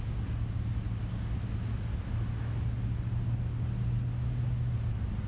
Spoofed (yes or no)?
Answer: no